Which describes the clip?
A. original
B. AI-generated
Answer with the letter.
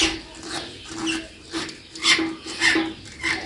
A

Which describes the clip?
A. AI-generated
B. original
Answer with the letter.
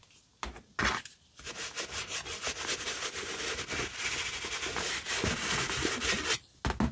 B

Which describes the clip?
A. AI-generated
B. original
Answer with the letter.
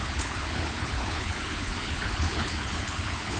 A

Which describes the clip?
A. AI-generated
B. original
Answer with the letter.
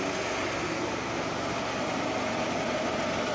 B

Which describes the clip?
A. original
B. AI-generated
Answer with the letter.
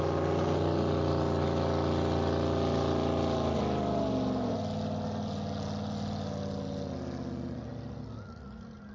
A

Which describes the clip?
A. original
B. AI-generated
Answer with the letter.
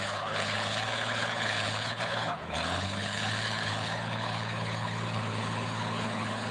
B